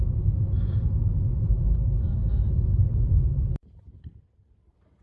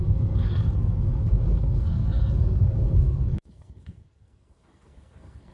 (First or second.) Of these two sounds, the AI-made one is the second